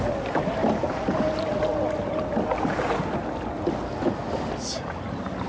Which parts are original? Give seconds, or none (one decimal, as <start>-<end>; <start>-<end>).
0.0-0.6; 2.9-5.5